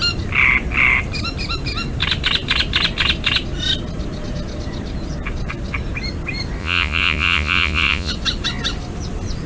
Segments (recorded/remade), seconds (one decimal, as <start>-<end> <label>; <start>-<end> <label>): 0.0-6.6 recorded; 6.6-8.1 remade; 8.1-9.5 recorded